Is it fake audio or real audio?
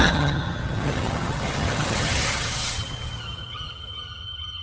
fake